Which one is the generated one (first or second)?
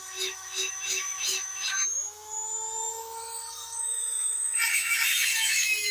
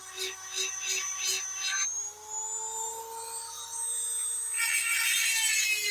first